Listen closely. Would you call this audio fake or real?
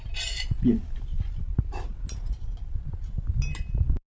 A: real